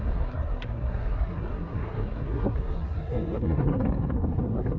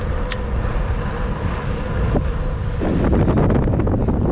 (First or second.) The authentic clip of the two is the second